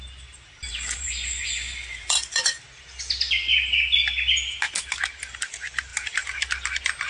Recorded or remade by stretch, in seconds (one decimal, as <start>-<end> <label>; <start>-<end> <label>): 0.0-0.7 recorded; 0.7-2.6 remade; 2.6-7.1 recorded